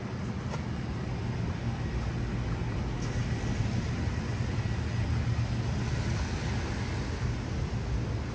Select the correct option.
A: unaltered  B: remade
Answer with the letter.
A